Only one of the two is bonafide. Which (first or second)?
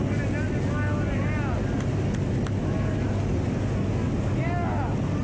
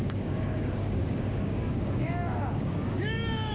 first